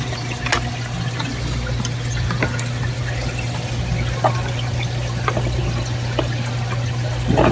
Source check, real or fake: real